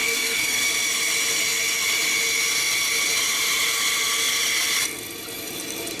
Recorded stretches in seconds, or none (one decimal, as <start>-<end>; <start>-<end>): 0.6-6.0